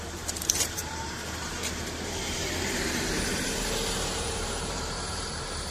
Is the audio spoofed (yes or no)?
yes